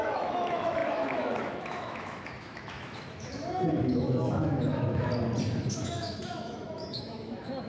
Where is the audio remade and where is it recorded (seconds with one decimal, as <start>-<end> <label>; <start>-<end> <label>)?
0.0-5.1 remade; 5.1-5.6 recorded; 5.6-7.7 remade